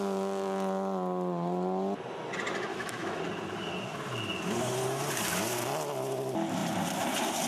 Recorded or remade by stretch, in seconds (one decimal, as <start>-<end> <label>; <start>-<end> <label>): 0.0-2.7 recorded; 2.7-3.2 remade; 3.2-7.5 recorded